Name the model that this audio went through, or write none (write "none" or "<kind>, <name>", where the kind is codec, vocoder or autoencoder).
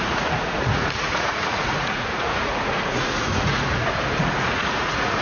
vocoder, Vocos